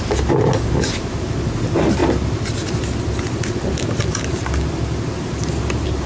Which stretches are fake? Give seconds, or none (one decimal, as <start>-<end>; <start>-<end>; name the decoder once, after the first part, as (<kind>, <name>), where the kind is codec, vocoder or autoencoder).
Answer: none